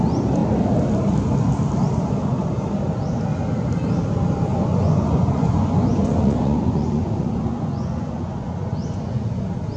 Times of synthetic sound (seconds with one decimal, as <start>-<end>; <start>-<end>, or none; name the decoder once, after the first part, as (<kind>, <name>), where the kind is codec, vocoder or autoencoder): 4.7-9.2 (vocoder, Vocos)